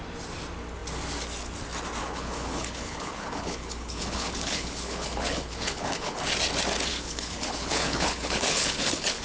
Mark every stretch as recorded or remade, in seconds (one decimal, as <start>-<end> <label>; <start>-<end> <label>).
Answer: 0.0-2.0 recorded; 2.0-6.2 remade; 6.2-6.9 recorded; 6.9-9.2 remade